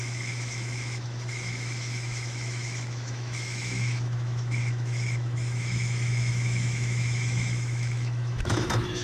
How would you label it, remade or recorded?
remade